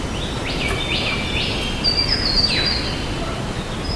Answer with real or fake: real